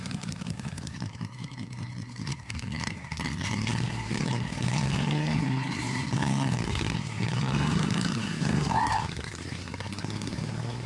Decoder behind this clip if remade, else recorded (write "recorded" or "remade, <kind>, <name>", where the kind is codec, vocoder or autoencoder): remade, codec, SNAC